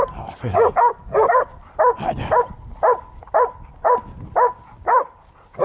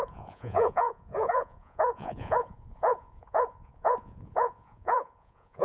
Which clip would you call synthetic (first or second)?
second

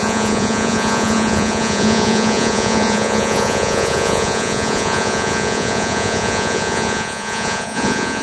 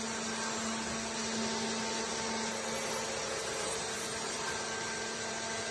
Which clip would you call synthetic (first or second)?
first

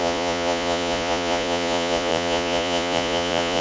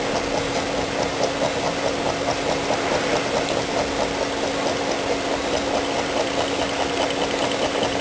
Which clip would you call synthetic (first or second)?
first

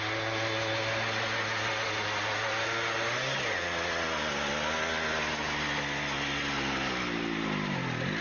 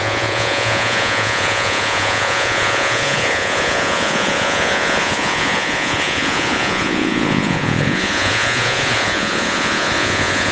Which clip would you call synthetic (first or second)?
second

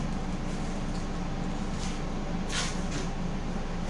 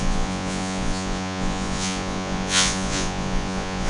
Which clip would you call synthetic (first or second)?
second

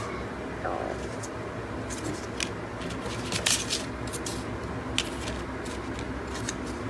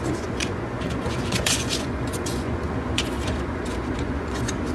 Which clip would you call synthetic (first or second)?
second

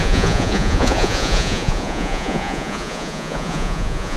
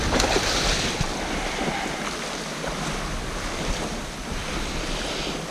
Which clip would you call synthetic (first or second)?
first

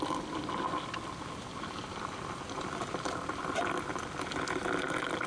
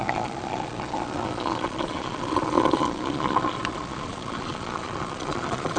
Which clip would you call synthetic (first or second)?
second